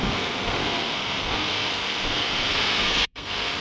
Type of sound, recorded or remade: remade